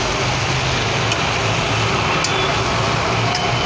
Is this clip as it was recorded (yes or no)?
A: yes